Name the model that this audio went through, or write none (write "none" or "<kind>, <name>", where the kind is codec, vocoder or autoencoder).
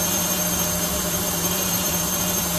vocoder, BigVGAN v2